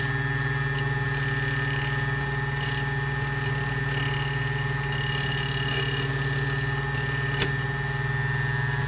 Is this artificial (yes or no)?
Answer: no